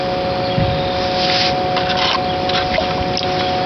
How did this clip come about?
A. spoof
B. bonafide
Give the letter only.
B